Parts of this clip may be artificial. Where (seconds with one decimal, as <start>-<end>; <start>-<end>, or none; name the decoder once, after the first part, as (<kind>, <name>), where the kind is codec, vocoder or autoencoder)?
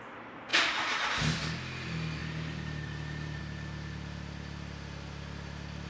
2.2-3.4 (vocoder, BigVGAN v2)